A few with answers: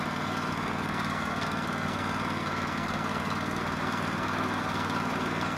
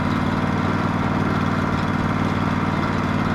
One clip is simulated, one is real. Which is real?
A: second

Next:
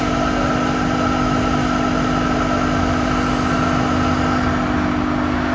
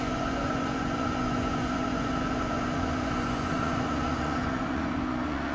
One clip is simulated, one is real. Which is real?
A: first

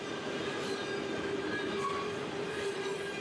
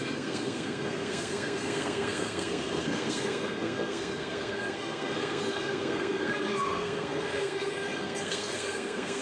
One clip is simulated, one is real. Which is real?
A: first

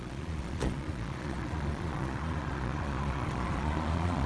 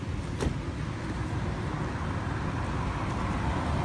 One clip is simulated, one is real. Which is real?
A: second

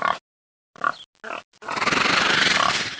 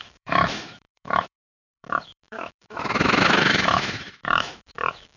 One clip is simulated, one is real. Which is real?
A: first